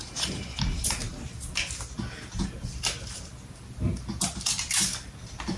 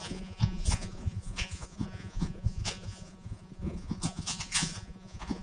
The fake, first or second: second